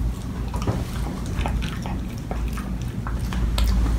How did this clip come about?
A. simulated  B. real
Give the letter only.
B